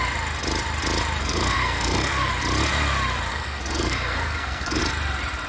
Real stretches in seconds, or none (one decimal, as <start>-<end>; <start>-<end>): 0.0-1.2; 2.3-3.3; 4.8-5.5